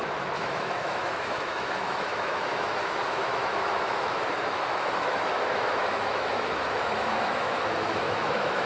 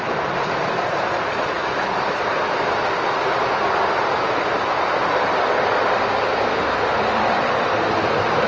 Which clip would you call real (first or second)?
second